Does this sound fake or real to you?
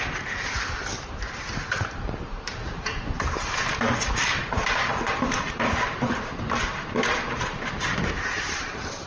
fake